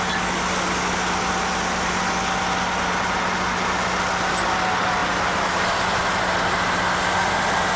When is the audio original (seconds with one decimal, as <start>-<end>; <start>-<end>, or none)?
0.0-7.8